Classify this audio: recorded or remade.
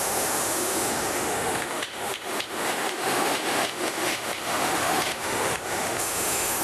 remade